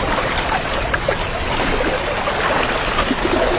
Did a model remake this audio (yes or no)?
no